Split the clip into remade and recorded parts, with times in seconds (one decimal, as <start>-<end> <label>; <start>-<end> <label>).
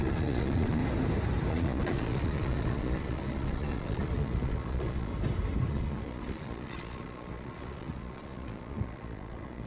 0.0-0.8 remade; 0.8-1.5 recorded; 1.5-5.1 remade; 5.1-5.7 recorded; 5.7-9.7 remade